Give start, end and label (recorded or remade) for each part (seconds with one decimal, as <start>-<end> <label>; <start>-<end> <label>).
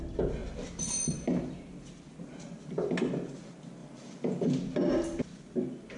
0.0-3.8 recorded; 3.8-4.5 remade; 4.5-6.0 recorded